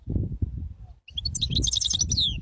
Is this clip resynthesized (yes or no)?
no